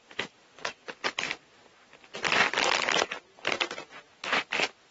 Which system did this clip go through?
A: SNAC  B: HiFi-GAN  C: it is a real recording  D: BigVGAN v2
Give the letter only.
C